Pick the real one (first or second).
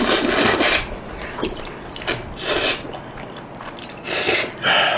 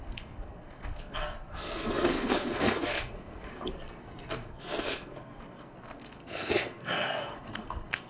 first